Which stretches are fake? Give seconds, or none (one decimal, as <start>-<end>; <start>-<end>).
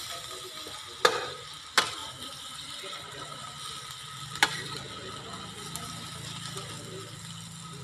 none